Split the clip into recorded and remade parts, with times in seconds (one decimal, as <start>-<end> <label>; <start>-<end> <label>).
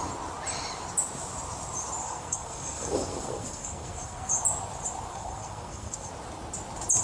0.0-2.0 recorded; 2.0-4.3 remade; 4.3-5.1 recorded; 5.1-6.1 remade; 6.1-7.0 recorded